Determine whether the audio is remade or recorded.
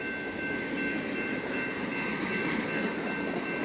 recorded